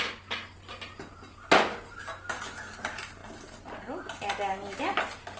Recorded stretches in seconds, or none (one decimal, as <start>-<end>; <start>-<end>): 0.0-5.4